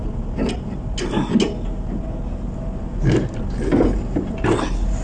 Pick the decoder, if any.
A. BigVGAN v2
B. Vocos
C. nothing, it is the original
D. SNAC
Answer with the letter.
C